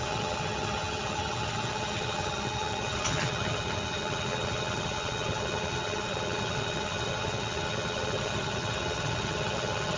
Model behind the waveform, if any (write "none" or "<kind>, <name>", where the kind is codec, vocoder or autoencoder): vocoder, HiFi-GAN